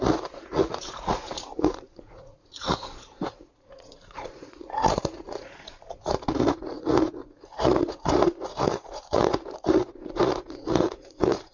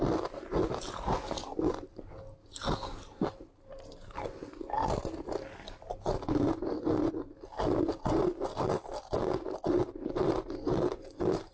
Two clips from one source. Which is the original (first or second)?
second